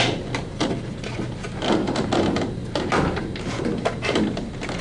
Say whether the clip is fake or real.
real